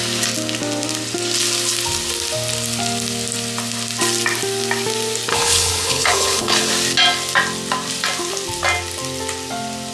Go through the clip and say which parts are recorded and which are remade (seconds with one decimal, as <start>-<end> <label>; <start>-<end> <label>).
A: 0.0-5.3 recorded; 5.3-6.7 remade; 6.7-9.9 recorded